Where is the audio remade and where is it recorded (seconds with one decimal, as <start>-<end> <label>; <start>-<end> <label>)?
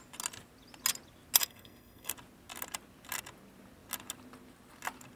0.0-1.4 recorded; 1.4-2.1 remade; 2.1-5.2 recorded